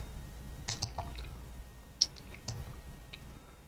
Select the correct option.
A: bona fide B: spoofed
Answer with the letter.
A